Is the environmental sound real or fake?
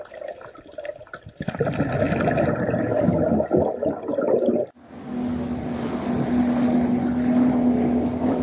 real